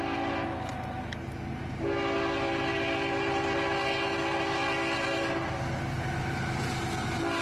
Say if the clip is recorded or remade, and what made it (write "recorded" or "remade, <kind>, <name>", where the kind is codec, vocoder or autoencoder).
recorded